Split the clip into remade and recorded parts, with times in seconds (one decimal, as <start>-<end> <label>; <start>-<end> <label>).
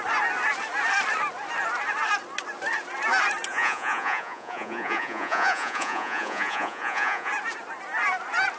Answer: 0.0-3.5 recorded; 3.5-7.3 remade; 7.3-8.6 recorded